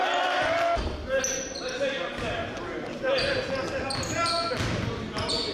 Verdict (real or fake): real